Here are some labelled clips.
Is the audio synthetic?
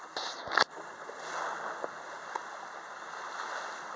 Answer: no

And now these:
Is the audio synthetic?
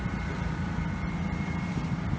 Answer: yes